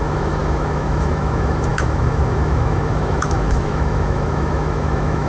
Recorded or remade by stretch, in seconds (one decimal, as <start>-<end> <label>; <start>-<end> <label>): 0.0-5.3 remade